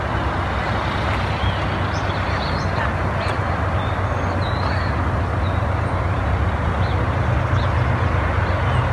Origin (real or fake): real